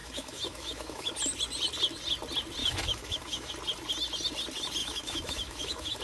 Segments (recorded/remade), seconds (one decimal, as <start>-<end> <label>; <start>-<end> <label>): 0.0-1.1 remade; 1.1-2.6 recorded; 2.6-3.5 remade; 3.5-4.8 recorded; 4.8-6.0 remade